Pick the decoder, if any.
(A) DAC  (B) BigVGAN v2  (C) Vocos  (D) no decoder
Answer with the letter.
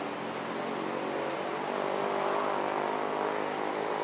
D